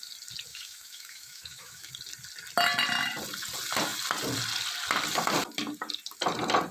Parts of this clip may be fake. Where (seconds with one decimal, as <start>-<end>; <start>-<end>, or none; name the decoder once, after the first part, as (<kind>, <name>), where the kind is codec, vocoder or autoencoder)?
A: 0.5-1.9 (autoencoder, DAC-VAE)